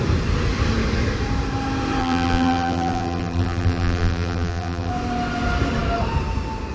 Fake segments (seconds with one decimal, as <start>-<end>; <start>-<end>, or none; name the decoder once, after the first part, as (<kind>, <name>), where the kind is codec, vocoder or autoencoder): 2.0-4.9 (vocoder, BigVGAN v2)